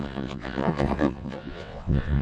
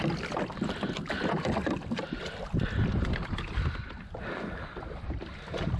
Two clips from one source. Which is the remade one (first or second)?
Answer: first